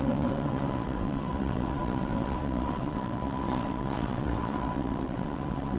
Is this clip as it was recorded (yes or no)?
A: no